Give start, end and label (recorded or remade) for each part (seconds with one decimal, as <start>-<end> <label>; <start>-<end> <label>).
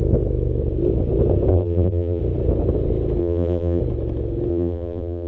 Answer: 0.0-1.5 recorded; 1.5-2.2 remade; 2.2-3.2 recorded; 3.2-3.8 remade; 3.8-4.5 recorded; 4.5-5.3 remade